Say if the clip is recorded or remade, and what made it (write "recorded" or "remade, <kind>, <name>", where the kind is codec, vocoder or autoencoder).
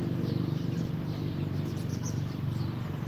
recorded